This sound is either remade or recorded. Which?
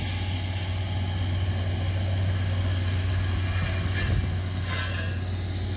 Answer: recorded